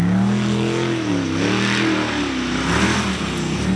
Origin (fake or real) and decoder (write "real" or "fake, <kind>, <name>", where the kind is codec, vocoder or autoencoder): real